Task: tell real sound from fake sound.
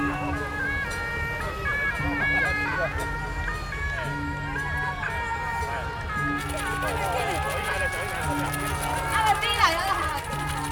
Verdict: real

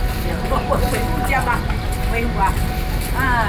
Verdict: real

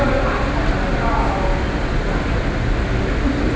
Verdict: real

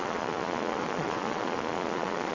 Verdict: fake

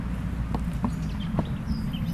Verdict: real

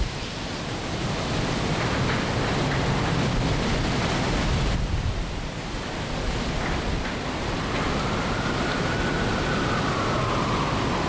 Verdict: real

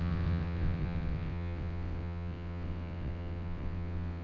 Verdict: fake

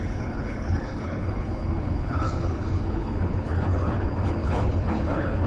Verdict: fake